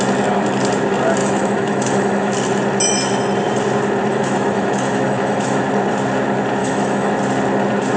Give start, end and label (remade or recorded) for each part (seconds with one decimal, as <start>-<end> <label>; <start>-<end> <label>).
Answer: 0.0-1.2 recorded; 1.2-2.3 remade; 2.3-4.1 recorded; 4.1-5.6 remade; 5.6-6.6 recorded; 6.6-7.1 remade; 7.1-8.0 recorded